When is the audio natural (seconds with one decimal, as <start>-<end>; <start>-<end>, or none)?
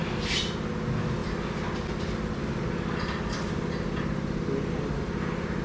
0.0-5.6